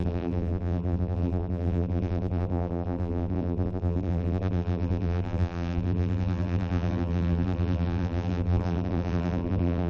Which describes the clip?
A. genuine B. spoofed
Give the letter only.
B